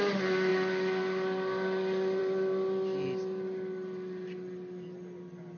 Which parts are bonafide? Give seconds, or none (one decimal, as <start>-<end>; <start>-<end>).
0.0-5.6